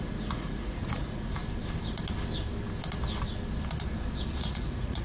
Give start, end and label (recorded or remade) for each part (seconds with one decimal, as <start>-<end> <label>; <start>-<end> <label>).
0.0-1.4 remade; 1.4-4.4 recorded; 4.4-5.0 remade